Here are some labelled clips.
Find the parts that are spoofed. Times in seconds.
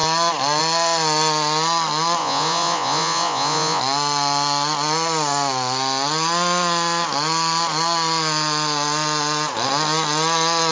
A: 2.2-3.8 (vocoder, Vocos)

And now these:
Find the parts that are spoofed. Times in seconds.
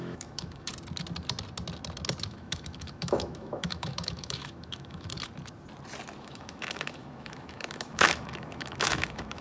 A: 0.0-0.7 (autoencoder, DAC-VAE); 2.3-5.1; 6.2-9.4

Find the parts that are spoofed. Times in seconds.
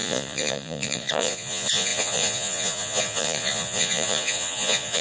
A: 0.0-5.0 (vocoder, Vocos)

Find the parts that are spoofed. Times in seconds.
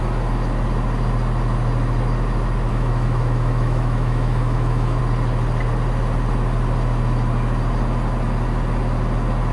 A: 2.7-5.0 (autoencoder, DAC-VAE)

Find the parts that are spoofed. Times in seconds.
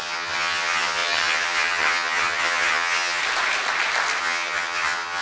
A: 0.0-3.2 (vocoder, HiFi-GAN); 4.2-5.2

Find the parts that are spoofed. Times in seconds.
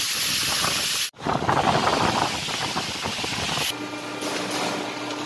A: none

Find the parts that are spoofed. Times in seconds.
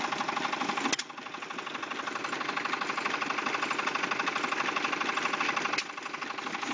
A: none